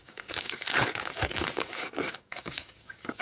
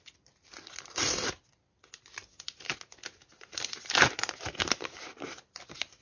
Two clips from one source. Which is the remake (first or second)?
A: first